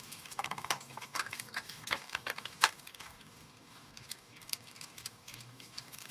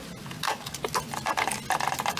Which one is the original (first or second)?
second